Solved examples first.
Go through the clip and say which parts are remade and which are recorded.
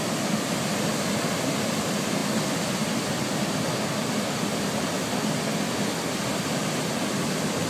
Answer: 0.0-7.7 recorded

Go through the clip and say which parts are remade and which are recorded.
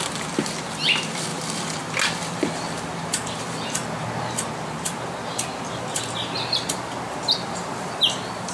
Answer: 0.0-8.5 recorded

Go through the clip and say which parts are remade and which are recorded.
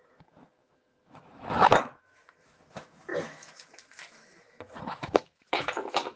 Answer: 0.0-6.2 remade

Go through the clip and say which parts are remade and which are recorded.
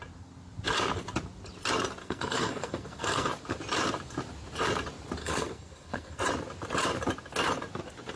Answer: 0.0-2.0 recorded; 2.0-3.3 remade; 3.3-5.2 recorded; 5.2-6.2 remade; 6.2-8.2 recorded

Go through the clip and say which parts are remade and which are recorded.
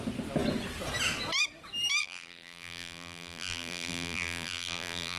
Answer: 0.0-2.0 recorded; 2.0-5.2 remade